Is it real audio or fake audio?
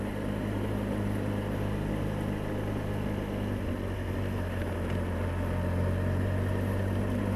real